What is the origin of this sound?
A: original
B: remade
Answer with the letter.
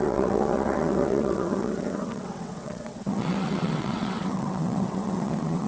B